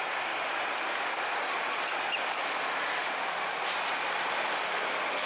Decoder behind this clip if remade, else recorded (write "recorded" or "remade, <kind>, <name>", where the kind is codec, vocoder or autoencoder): recorded